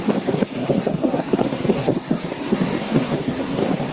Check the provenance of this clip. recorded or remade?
remade